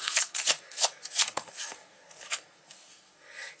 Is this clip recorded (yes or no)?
no